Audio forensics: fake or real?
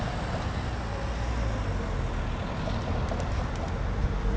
real